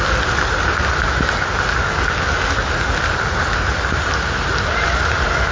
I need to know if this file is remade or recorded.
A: recorded